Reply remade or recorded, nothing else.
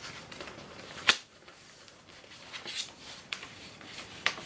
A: remade